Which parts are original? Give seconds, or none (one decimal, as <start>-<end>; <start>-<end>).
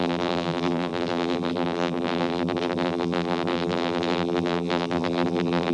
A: none